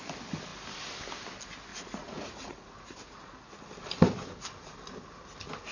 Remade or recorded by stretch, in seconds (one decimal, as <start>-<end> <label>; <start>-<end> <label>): 0.0-1.7 recorded; 1.7-3.5 remade; 3.5-5.7 recorded